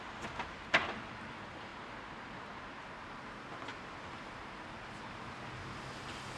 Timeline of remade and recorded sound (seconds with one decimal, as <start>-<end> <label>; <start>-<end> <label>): 0.0-6.4 recorded